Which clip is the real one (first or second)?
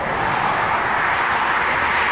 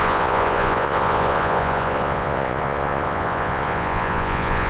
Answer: first